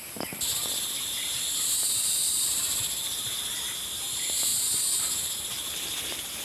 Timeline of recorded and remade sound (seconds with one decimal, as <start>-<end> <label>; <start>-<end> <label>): 0.0-4.5 remade; 4.5-5.7 recorded; 5.7-6.4 remade